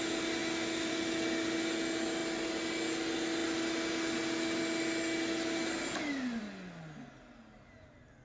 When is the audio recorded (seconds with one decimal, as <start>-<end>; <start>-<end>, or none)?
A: 0.0-8.2